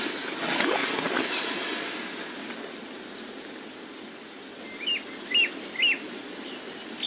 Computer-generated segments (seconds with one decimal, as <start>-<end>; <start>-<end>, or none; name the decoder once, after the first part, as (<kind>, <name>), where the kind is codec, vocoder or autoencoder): none